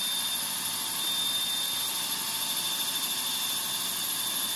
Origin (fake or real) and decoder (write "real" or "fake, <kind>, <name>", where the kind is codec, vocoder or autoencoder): real